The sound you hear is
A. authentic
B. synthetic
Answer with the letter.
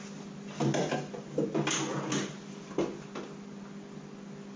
A